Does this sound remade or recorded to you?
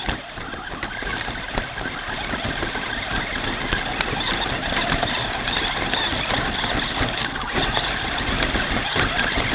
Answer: recorded